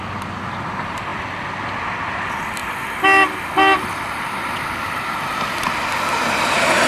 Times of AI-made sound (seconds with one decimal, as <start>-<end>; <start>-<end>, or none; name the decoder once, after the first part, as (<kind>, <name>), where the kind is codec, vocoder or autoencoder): none